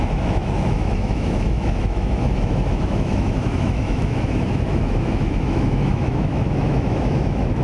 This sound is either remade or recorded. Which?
remade